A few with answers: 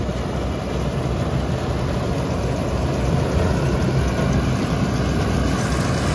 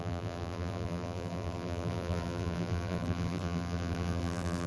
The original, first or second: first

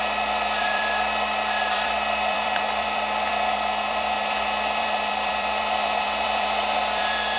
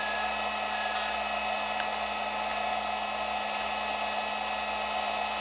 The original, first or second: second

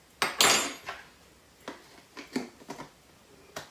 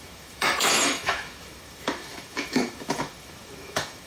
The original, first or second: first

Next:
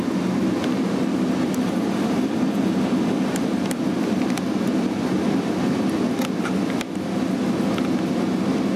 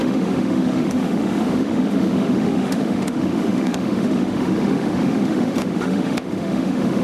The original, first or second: first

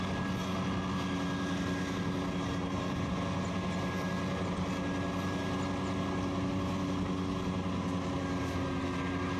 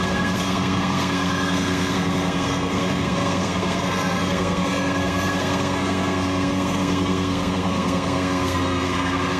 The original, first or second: first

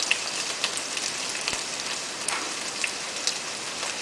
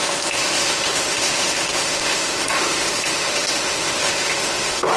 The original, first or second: first